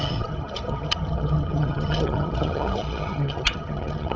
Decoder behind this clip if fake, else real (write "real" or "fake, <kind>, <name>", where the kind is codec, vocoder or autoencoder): fake, vocoder, HiFi-GAN